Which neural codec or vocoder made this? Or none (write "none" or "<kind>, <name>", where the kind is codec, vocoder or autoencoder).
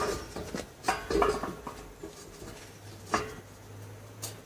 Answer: none